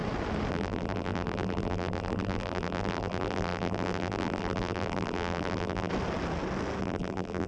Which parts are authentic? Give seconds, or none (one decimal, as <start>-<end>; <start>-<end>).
0.0-0.5; 5.9-6.8